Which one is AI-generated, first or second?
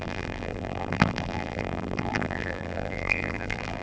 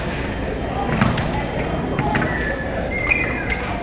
first